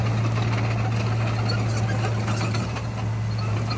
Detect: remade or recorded recorded